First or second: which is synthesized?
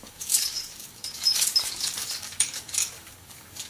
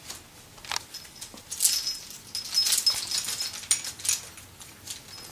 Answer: first